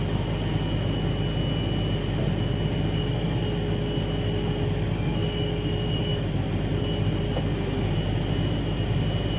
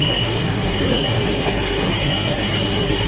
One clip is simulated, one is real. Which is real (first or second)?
first